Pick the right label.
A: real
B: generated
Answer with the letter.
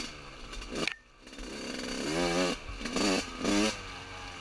A